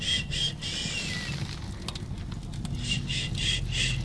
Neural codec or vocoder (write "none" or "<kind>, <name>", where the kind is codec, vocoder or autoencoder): none